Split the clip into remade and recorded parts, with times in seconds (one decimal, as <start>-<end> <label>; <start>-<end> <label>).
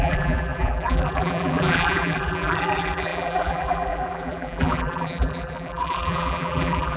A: 0.0-7.0 remade